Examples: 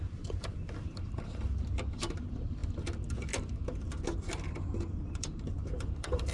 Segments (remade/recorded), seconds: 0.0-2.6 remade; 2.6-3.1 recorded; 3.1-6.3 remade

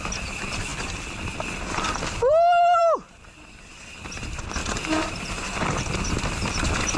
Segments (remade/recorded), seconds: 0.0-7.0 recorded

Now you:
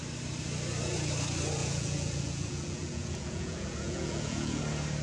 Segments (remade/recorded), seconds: 0.0-1.6 recorded; 1.6-4.6 remade; 4.6-5.0 recorded

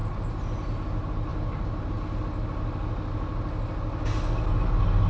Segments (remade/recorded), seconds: 0.0-5.1 recorded

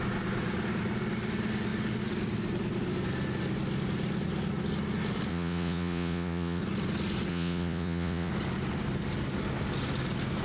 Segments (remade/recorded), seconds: 0.0-5.3 recorded; 5.3-6.6 remade; 6.6-7.3 recorded; 7.3-8.3 remade; 8.3-10.4 recorded